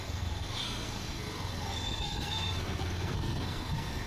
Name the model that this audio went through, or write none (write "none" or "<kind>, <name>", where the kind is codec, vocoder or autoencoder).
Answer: codec, SNAC